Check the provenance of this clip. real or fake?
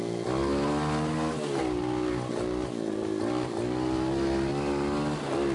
real